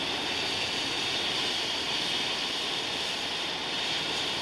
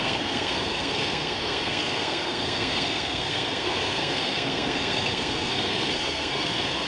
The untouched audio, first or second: first